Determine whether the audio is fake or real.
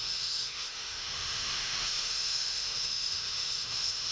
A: fake